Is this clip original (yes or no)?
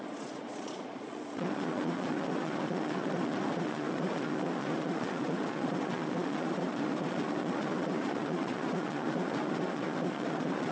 no